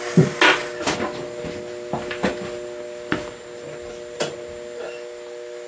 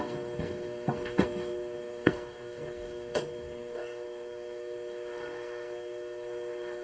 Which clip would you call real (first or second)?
first